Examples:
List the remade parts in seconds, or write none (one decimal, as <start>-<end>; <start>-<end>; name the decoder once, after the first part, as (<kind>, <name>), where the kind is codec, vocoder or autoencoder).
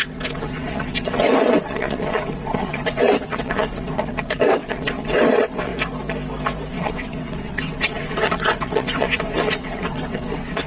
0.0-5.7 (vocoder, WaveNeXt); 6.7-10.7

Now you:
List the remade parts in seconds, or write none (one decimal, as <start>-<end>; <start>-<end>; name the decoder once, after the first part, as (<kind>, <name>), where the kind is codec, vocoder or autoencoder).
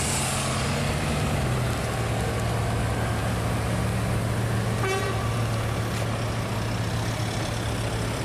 none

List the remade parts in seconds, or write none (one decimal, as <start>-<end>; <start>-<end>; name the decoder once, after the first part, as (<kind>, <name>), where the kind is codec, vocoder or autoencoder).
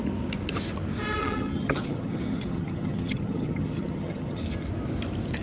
1.2-4.4 (vocoder, HiFi-GAN)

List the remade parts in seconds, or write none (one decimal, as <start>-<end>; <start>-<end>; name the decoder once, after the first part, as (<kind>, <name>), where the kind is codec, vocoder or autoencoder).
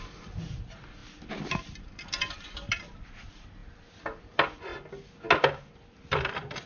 0.0-3.6 (vocoder, BigVGAN v2); 4.2-4.7; 5.7-6.7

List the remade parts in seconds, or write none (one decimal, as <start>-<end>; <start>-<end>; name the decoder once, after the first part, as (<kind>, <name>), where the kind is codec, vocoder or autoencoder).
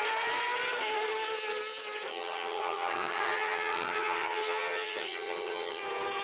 2.1-5.8 (vocoder, HiFi-GAN)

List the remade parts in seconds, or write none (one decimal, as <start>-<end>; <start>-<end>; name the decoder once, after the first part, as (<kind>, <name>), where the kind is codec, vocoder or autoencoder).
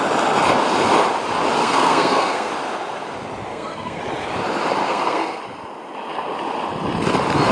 1.6-2.5 (codec, SNAC); 3.5-4.0; 4.8-5.4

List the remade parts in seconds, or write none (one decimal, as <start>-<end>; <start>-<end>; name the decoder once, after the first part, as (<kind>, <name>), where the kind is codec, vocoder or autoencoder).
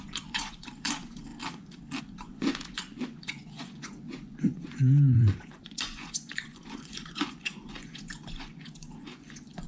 0.0-1.3 (vocoder, Vocos); 2.0-9.7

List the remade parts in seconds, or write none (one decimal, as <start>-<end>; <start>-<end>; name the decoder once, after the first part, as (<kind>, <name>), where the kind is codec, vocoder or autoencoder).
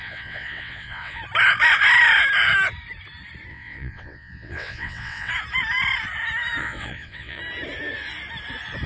0.0-1.2 (vocoder, WaveNeXt); 3.5-5.3; 6.6-7.4